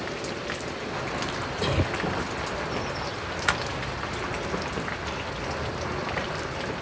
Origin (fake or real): real